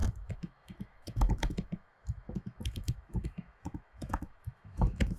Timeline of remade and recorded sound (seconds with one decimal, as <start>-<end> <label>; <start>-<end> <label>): 0.0-5.2 remade